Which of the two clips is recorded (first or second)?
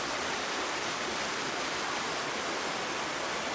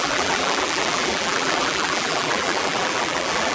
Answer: first